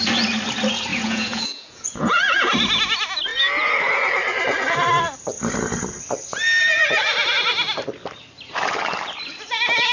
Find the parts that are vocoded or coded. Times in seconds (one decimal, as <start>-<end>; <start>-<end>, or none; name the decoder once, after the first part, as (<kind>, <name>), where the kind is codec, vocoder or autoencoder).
0.9-2.5 (vocoder, Vocos)